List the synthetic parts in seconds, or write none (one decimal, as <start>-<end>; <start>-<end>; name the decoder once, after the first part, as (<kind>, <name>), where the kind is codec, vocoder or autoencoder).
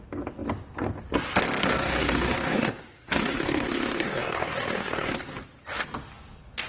1.6-5.3 (codec, SNAC)